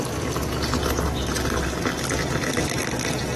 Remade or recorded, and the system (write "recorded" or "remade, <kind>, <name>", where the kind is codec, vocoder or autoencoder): recorded